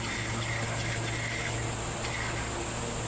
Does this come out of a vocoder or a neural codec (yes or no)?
no